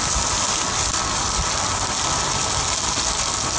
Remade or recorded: recorded